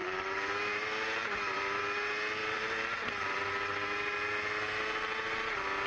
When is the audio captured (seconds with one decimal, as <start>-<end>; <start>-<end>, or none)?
1.8-2.4; 3.4-5.9